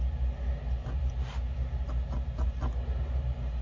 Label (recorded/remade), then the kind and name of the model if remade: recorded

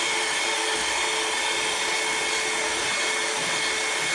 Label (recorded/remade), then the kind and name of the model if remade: recorded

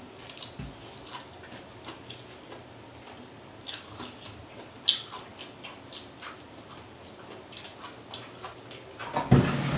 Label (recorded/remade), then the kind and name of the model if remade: recorded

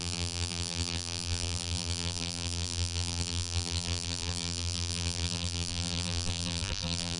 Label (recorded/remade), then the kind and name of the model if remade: remade, vocoder, BigVGAN v2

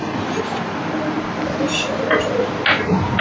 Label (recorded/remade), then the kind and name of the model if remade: recorded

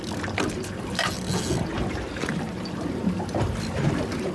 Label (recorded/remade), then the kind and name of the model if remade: recorded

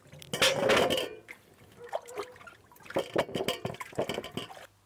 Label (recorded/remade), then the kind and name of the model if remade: recorded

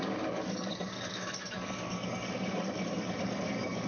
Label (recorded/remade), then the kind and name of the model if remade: remade, codec, DAC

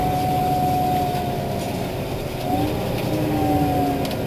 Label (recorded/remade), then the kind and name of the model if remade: recorded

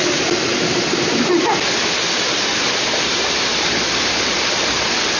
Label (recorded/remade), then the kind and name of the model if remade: recorded